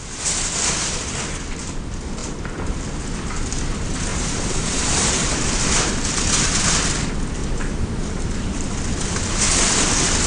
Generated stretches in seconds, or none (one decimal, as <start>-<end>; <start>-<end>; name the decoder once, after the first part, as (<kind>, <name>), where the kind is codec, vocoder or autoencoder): 2.2-2.7 (vocoder, BigVGAN v2); 4.1-6.5; 7.4-8.8